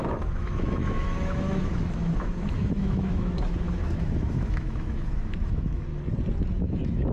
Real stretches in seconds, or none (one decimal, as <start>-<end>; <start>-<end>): 5.9-6.5